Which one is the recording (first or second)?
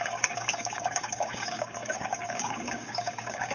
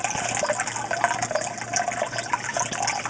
second